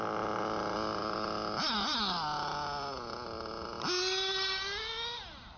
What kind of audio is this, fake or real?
real